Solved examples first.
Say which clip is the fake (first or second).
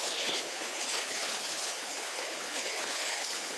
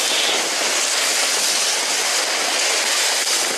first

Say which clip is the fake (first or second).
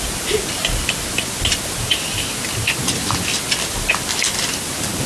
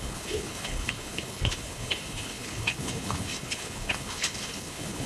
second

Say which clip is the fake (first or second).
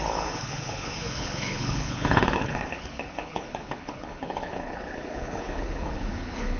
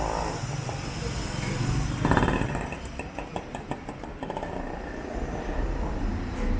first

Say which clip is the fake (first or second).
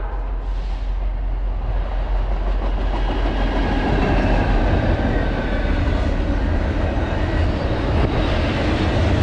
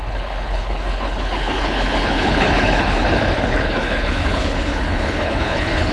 second